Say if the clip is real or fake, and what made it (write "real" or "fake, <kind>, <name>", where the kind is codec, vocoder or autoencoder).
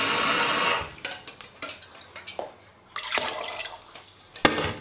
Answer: real